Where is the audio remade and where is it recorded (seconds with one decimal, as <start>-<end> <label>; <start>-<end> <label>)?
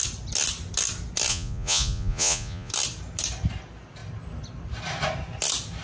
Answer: 0.0-1.3 recorded; 1.3-2.7 remade; 2.7-5.8 recorded